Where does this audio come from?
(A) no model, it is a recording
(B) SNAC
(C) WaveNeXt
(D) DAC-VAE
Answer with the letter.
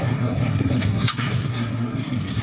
B